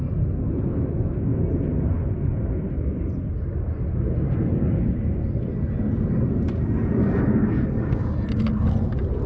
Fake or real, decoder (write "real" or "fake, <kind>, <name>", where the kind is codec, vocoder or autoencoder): real